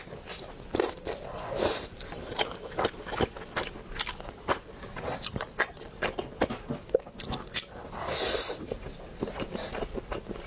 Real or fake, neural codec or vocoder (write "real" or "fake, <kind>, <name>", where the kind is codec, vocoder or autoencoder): real